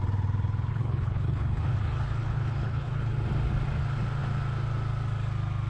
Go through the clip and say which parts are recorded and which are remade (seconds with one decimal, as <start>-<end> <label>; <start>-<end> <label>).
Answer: 0.0-0.7 recorded; 0.7-3.1 remade; 3.1-5.7 recorded